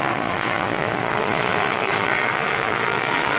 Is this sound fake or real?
fake